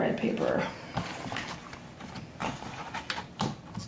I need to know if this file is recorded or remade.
recorded